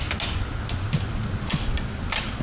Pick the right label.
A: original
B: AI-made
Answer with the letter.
A